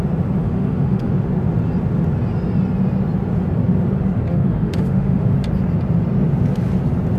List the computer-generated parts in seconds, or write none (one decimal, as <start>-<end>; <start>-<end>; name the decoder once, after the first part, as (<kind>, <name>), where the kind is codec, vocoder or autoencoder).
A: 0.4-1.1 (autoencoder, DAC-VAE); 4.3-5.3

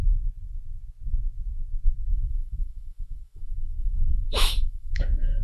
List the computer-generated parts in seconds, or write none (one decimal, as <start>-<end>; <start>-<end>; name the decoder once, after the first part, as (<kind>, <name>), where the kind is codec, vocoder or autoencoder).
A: 2.1-5.4 (autoencoder, DAC-VAE)

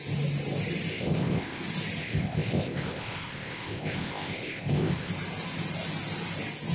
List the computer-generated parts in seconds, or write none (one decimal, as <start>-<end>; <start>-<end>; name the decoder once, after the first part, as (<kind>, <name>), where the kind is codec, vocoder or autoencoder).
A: 0.9-1.6 (codec, ZipCodec); 2.0-5.1